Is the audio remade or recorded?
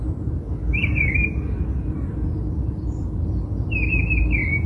recorded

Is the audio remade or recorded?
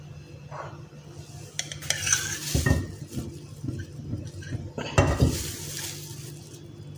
recorded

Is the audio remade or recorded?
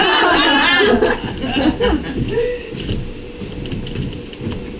recorded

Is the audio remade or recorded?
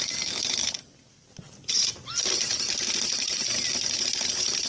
recorded